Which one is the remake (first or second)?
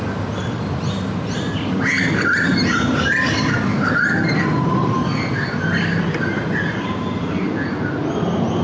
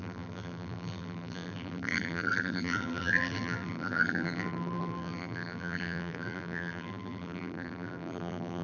second